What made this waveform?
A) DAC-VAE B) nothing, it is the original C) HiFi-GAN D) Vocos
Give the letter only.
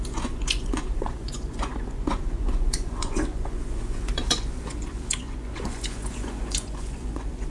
D